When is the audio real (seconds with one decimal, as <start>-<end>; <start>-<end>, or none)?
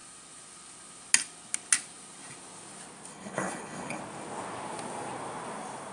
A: 0.0-3.1; 4.0-5.9